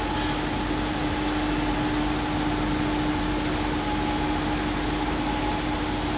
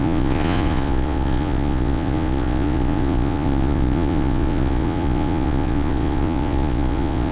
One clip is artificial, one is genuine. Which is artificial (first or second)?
second